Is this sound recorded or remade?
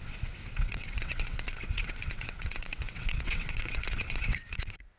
remade